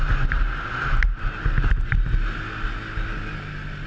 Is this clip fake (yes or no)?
no